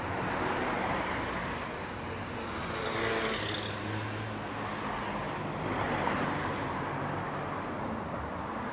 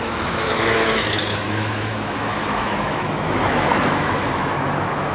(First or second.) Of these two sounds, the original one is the first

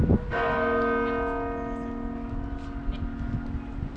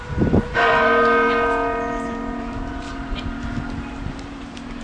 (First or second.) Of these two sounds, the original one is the first